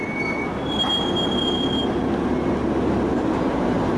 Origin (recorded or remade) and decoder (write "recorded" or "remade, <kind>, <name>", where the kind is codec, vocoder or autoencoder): recorded